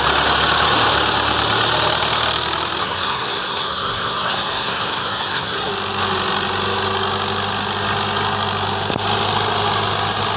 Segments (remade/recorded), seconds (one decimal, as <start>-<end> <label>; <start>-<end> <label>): 0.0-2.8 recorded; 2.8-5.7 remade; 5.7-10.4 recorded